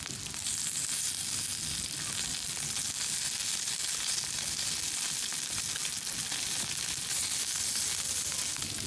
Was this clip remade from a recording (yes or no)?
no